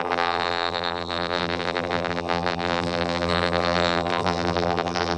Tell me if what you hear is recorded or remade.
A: remade